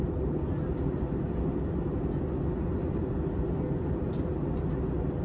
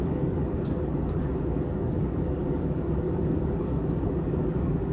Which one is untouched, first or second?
first